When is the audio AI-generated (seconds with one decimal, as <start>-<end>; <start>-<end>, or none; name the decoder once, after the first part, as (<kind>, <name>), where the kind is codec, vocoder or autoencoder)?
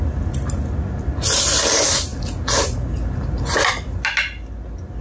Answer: none